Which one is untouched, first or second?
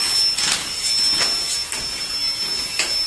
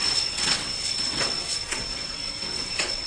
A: first